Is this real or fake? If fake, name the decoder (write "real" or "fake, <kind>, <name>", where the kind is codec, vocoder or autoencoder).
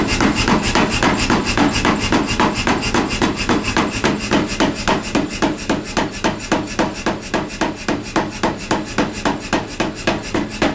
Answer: real